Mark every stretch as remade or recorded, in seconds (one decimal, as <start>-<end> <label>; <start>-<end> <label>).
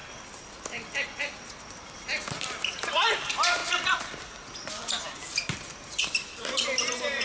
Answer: 0.0-2.4 recorded; 2.4-3.6 remade; 3.6-6.3 recorded; 6.3-7.2 remade